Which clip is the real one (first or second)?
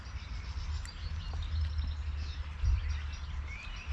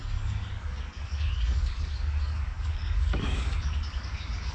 first